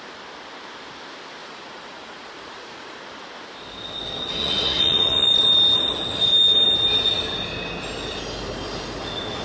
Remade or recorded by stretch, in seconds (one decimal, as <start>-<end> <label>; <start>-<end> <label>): 0.0-1.4 recorded; 1.4-3.0 remade; 3.0-4.4 recorded; 4.4-5.4 remade; 5.4-9.4 recorded